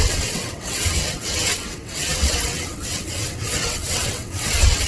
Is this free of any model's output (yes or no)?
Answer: no